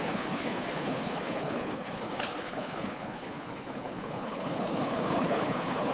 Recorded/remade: remade